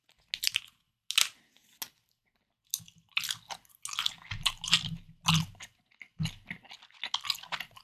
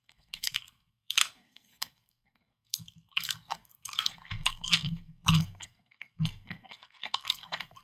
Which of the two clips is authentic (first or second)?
first